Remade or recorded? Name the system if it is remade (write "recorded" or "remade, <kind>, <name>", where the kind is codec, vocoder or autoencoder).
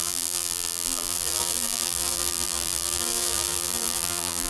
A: remade, vocoder, BigVGAN v2